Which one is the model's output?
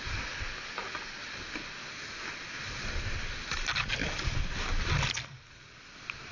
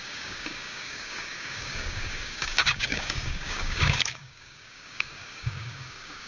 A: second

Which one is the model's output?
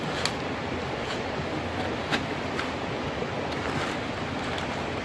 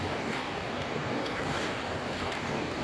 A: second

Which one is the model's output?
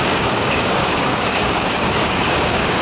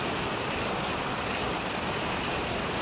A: first